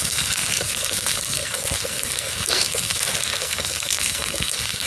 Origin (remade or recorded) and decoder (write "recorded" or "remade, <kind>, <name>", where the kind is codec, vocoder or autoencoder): remade, codec, SNAC